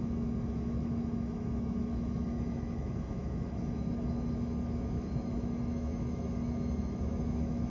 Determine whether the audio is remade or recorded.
remade